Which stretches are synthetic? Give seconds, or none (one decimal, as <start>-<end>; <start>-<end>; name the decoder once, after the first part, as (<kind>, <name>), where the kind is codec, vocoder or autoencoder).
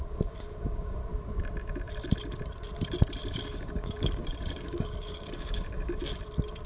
0.0-1.0 (codec, DAC); 3.3-6.0